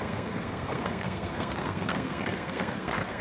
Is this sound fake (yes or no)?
yes